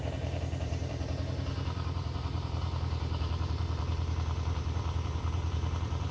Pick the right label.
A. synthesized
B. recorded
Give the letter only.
A